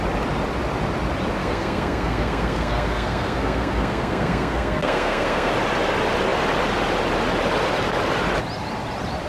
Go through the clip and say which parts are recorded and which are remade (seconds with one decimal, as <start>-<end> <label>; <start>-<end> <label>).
0.0-1.4 recorded; 1.4-5.5 remade; 5.5-9.3 recorded